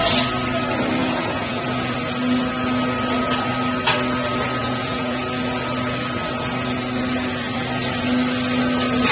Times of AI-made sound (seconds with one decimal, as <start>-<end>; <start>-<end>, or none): 1.0-1.6; 4.6-5.2